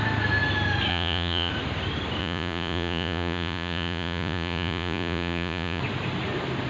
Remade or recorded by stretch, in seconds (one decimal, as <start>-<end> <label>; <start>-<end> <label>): 0.0-0.9 recorded; 0.9-1.5 remade; 1.5-2.2 recorded; 2.2-5.8 remade; 5.8-6.7 recorded